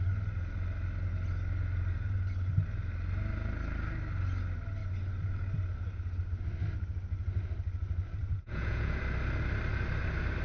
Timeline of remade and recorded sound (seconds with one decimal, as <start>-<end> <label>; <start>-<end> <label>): 0.0-8.2 recorded; 8.2-9.0 remade; 9.0-10.4 recorded